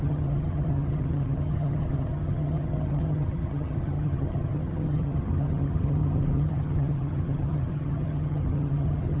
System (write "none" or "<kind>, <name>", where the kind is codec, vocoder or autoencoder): vocoder, HiFi-GAN